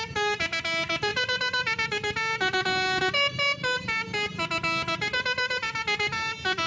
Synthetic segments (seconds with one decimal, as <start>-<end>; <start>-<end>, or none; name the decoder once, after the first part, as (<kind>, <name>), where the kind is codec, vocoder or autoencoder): none